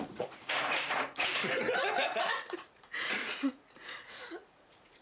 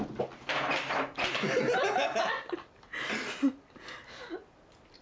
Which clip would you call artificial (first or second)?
first